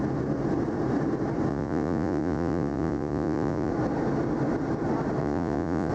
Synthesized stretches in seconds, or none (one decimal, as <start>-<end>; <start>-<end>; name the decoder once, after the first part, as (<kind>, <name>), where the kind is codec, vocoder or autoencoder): 1.5-3.7 (vocoder, Vocos); 5.2-5.9